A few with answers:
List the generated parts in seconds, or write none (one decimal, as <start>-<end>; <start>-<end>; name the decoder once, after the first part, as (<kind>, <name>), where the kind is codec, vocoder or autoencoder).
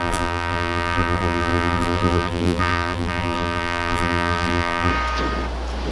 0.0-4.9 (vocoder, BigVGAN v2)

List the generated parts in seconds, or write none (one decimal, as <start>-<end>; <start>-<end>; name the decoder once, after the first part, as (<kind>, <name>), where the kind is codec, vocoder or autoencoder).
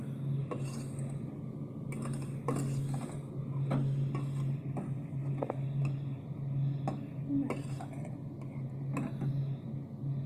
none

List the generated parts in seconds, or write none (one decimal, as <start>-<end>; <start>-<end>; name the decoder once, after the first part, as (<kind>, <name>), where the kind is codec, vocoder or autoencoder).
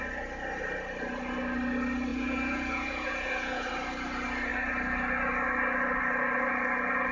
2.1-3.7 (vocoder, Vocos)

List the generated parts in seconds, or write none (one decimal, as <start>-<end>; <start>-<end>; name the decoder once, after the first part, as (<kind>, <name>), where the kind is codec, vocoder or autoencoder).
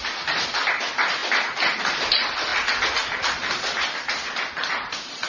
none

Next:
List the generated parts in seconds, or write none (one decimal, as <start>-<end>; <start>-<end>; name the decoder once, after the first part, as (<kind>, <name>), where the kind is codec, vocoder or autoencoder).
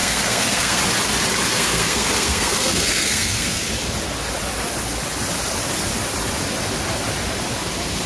0.0-0.8 (codec, SNAC); 1.5-3.6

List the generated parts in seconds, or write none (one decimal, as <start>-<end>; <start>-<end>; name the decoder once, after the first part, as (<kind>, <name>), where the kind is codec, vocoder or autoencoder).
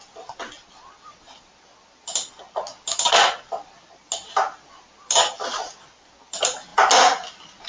none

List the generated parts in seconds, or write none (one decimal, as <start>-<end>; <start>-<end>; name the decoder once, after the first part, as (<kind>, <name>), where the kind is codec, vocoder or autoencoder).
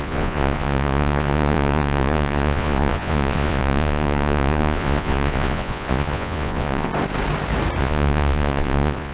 0.0-6.9 (vocoder, Vocos); 7.8-9.1